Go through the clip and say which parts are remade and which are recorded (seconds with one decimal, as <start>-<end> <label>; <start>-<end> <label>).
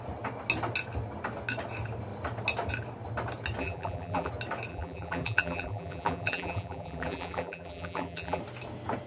0.0-3.6 recorded; 3.6-4.3 remade; 4.3-4.7 recorded; 4.7-8.4 remade; 8.4-9.1 recorded